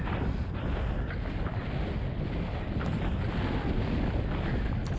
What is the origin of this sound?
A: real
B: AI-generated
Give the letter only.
A